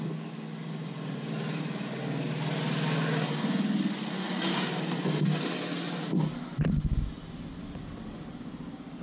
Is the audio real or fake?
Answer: real